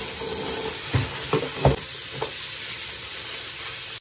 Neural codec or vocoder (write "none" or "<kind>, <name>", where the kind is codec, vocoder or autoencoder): none